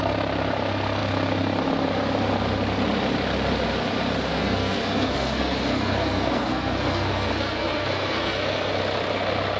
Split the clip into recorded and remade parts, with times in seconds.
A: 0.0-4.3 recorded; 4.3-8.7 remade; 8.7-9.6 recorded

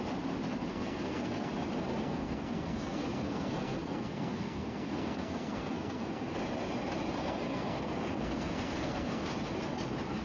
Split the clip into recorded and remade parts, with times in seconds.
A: 0.0-0.7 recorded; 0.7-1.5 remade; 1.5-1.9 recorded; 1.9-6.3 remade; 6.3-7.2 recorded; 7.2-9.2 remade; 9.2-10.2 recorded

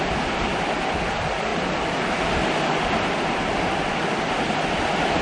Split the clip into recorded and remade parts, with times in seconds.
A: 0.0-5.2 recorded

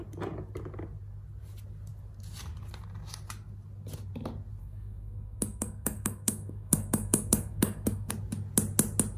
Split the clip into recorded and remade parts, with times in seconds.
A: 0.0-4.6 recorded; 4.6-8.1 remade; 8.1-9.2 recorded

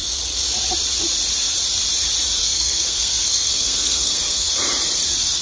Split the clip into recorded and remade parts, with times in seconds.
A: 0.0-2.4 recorded; 2.4-4.5 remade; 4.5-5.4 recorded

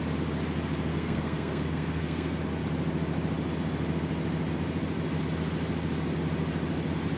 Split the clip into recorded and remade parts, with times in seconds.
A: 0.0-0.9 recorded; 0.9-2.4 remade; 2.4-7.2 recorded